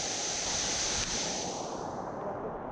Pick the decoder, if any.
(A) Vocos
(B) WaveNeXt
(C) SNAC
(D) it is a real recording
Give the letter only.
D